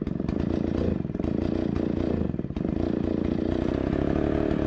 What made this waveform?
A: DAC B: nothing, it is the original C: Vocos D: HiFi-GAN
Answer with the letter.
B